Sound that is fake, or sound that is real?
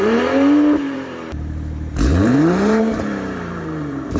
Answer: fake